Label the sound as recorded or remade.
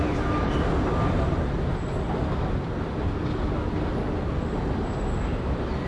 recorded